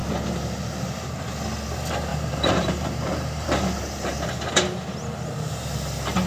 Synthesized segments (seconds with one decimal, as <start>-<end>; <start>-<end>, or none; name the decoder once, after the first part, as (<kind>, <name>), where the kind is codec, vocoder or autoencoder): 2.1-4.5 (vocoder, BigVGAN v2)